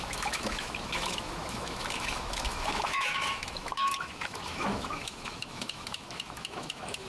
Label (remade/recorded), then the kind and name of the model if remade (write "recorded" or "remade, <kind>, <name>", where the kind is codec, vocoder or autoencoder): remade, autoencoder, DAC-VAE